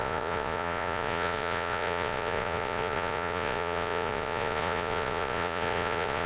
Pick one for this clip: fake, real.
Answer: fake